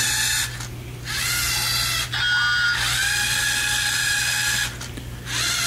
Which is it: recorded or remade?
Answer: recorded